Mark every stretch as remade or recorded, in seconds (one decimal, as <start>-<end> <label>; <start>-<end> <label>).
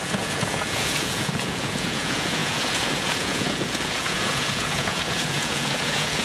0.0-6.2 remade